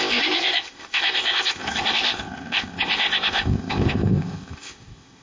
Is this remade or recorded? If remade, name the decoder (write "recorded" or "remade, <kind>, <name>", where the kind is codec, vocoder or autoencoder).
remade, codec, ZipCodec